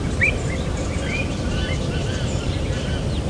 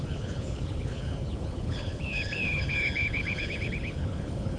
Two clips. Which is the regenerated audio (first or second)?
second